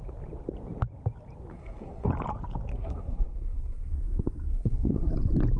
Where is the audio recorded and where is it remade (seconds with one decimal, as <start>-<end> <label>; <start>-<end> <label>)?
0.0-1.5 recorded; 1.5-2.1 remade; 2.1-2.7 recorded; 2.7-3.9 remade; 3.9-4.5 recorded; 4.5-5.1 remade; 5.1-5.6 recorded